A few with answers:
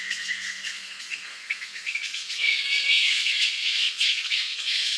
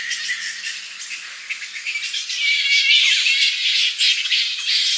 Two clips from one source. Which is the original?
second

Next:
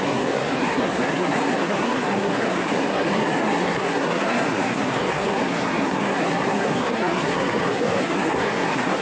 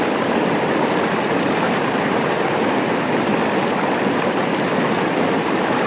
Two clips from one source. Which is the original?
second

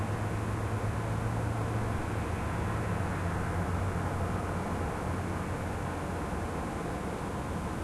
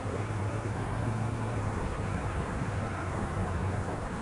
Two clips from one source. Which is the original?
first